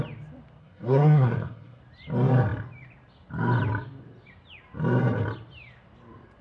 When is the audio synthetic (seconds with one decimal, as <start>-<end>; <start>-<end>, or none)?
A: 0.6-1.8